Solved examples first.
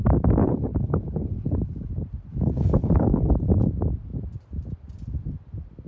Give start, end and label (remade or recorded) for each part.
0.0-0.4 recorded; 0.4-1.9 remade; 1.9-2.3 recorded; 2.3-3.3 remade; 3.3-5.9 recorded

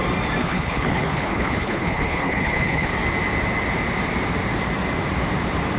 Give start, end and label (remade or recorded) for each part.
0.0-0.4 recorded; 0.4-2.9 remade; 2.9-5.8 recorded

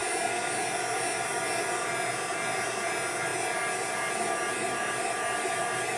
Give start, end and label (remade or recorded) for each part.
0.0-6.0 recorded

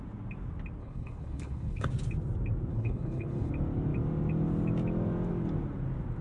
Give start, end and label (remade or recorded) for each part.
0.0-0.8 recorded; 0.8-1.9 remade; 1.9-2.7 recorded; 2.7-3.5 remade; 3.5-6.2 recorded

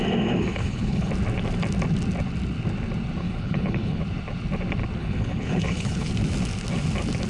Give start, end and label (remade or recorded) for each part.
0.0-0.5 recorded; 0.5-1.1 remade; 1.1-3.2 recorded; 3.2-4.0 remade; 4.0-5.0 recorded; 5.0-6.1 remade; 6.1-7.3 recorded

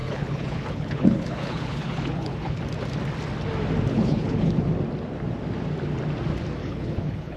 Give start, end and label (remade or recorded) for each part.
0.0-2.6 remade; 2.6-3.9 recorded; 3.9-4.6 remade; 4.6-6.6 recorded; 6.6-7.4 remade

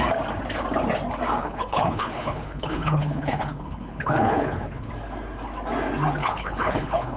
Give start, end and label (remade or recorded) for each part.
0.0-1.4 recorded; 1.4-4.9 remade; 4.9-6.2 recorded; 6.2-7.2 remade